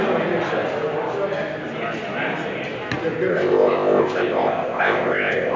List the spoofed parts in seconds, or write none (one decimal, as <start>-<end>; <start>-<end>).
3.3-5.6